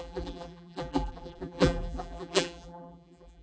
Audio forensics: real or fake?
fake